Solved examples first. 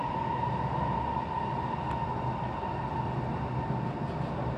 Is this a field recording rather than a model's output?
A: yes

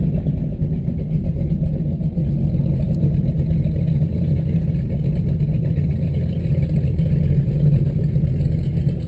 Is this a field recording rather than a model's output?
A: yes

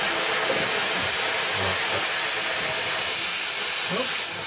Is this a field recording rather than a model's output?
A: yes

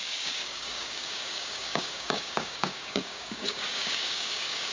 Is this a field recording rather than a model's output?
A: no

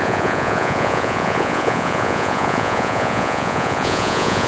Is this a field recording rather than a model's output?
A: no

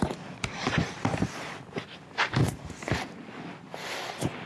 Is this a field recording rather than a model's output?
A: yes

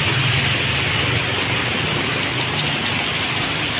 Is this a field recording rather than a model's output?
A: yes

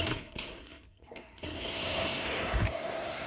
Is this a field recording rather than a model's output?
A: no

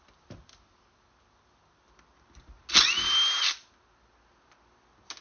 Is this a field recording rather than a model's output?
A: yes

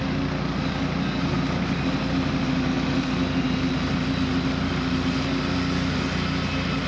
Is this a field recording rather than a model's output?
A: yes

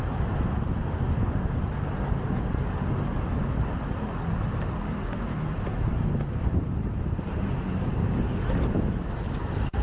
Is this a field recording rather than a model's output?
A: yes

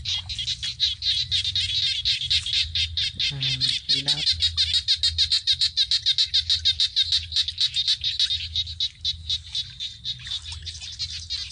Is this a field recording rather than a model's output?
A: yes